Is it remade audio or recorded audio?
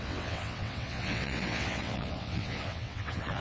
remade